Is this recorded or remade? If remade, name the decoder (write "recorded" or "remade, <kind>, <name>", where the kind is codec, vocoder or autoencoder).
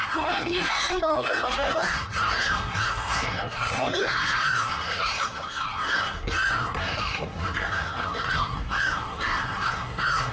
remade, codec, SNAC